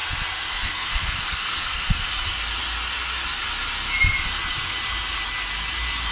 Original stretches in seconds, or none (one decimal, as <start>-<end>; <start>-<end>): 0.0-0.5; 2.1-6.1